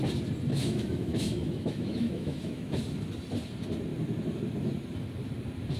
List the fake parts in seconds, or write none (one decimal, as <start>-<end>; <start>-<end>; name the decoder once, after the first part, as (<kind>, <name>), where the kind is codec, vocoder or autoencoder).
0.5-2.8 (autoencoder, DAC-VAE)